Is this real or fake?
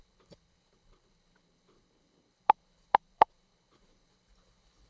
fake